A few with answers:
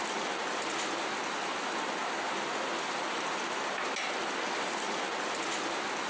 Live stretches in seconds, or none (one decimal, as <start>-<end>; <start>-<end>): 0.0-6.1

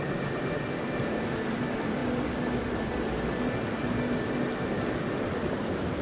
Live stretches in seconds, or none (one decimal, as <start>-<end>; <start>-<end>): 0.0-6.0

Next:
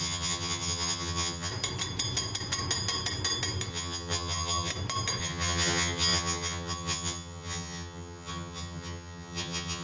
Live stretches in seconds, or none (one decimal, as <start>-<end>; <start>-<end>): 1.5-3.7; 4.7-5.2

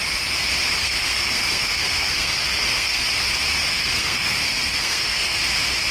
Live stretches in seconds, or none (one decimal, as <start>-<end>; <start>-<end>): 0.0-0.8; 3.0-3.7; 5.4-5.9

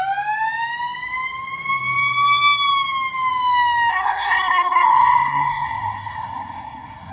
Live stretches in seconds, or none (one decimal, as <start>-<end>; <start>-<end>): 0.0-3.9

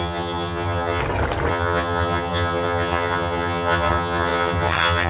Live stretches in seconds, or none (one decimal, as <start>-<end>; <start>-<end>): 1.0-1.5

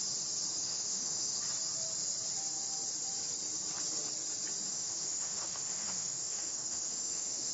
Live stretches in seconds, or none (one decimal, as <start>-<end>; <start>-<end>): 0.0-0.6; 1.4-4.7

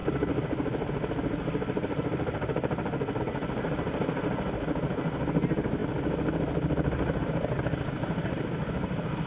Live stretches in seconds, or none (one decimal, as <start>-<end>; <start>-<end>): 0.0-9.3